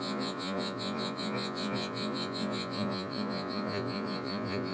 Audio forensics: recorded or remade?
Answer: remade